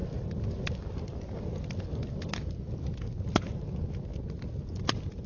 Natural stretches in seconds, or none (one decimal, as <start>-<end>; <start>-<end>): 0.0-5.3